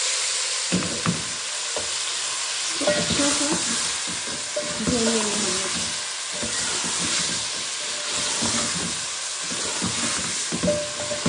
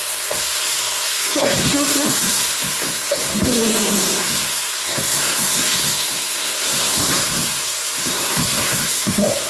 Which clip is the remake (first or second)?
second